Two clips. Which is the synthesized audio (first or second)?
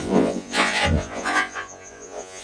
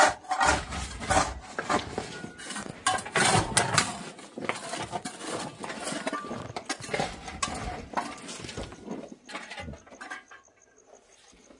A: first